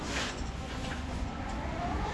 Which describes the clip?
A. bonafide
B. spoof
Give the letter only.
B